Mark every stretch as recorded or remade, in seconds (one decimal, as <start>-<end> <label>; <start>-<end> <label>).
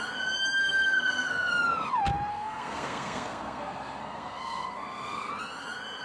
0.0-0.6 recorded; 0.6-1.5 remade; 1.5-2.3 recorded; 2.3-5.3 remade; 5.3-6.0 recorded